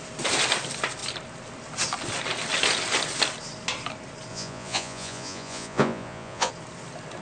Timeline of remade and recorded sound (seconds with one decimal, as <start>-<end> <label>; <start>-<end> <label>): 0.0-4.3 recorded; 4.3-6.5 remade; 6.5-7.2 recorded